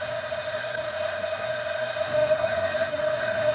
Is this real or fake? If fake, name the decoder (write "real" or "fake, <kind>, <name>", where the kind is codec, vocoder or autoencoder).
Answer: fake, codec, SNAC